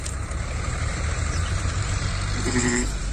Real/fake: fake